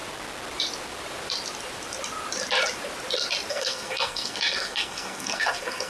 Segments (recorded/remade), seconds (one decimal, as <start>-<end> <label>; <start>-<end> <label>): 0.0-3.5 recorded; 3.5-5.9 remade